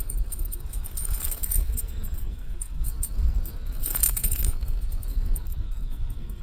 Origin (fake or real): fake